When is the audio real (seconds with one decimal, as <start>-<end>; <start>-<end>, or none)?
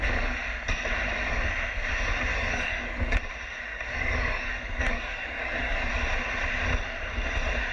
0.0-2.3; 3.2-3.7; 5.9-7.7